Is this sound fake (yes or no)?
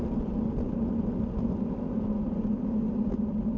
no